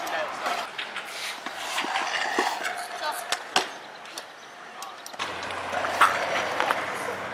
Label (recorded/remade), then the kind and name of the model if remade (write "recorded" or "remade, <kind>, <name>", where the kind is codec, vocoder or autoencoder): recorded